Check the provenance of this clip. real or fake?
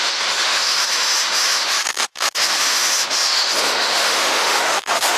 fake